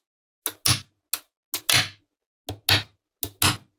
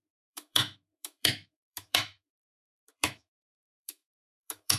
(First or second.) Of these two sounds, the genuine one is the first